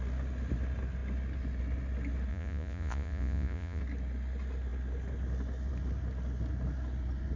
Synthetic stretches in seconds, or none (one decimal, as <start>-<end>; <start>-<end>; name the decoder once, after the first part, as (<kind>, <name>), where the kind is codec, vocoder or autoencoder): 2.3-3.8 (vocoder, Vocos)

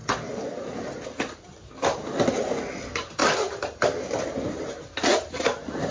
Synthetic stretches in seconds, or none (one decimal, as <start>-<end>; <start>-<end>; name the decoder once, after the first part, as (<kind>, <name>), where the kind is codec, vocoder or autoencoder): none

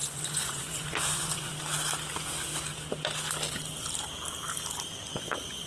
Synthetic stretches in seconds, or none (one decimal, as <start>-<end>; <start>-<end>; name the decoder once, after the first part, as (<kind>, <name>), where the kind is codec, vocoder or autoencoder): 0.0-1.5 (vocoder, Vocos); 4.9-5.7

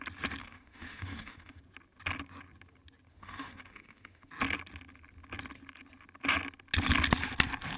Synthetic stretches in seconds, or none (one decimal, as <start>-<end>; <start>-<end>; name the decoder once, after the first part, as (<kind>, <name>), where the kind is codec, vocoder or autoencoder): 0.4-1.6 (autoencoder, DAC-VAE); 3.1-4.3

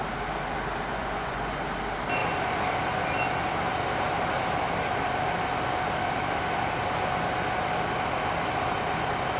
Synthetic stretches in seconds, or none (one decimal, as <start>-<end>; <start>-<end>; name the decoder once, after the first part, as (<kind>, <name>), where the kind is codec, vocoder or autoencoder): 0.9-1.6 (vocoder, Vocos)

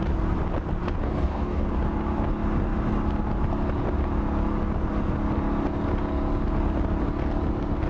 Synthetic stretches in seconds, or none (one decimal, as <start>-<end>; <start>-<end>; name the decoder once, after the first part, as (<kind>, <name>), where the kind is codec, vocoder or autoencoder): 1.0-1.7 (codec, DAC)

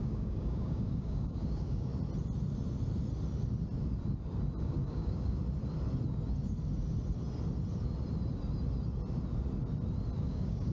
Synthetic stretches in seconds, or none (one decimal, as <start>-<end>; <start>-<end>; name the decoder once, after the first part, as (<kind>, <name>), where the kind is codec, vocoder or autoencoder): 0.0-1.9 (codec, DAC); 4.6-5.4; 10.2-10.7

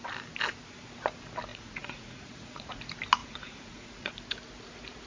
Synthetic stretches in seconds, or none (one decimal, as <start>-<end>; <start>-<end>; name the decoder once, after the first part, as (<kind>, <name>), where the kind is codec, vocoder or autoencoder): 1.5-2.8 (vocoder, Vocos); 3.2-4.1